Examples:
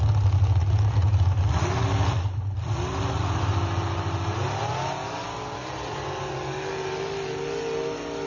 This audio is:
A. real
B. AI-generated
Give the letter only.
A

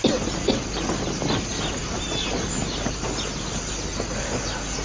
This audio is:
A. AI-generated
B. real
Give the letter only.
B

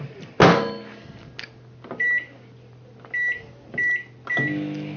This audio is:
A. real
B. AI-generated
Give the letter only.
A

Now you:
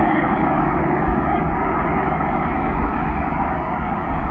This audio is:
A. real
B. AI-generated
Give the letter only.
B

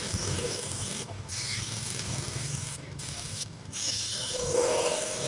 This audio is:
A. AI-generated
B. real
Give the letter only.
A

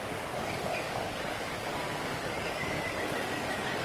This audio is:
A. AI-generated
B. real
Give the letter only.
A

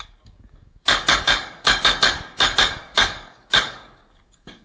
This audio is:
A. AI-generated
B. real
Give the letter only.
A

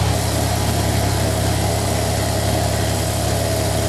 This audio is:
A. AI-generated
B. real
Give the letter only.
B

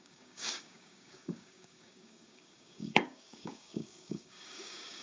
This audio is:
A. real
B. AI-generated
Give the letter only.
B